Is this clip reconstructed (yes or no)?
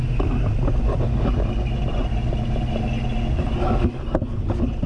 no